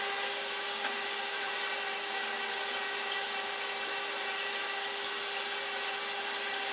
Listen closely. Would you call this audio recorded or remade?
recorded